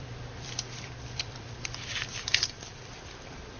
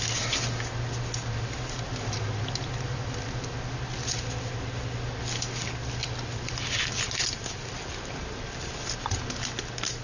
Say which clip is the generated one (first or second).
first